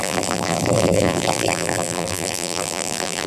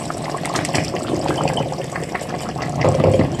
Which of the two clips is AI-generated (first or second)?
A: first